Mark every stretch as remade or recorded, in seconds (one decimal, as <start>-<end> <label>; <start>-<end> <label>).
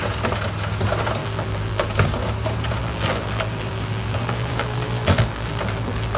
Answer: 0.0-1.2 recorded; 1.2-1.8 remade; 1.8-2.8 recorded; 2.8-6.2 remade